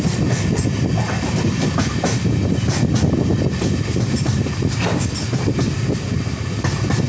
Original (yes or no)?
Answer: yes